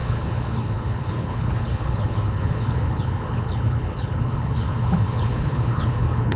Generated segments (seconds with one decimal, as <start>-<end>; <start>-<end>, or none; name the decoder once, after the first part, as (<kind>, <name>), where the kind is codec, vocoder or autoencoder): 0.0-6.4 (codec, HILCodec)